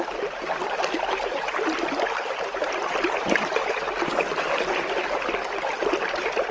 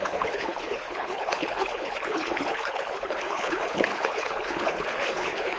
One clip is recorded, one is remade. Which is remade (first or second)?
second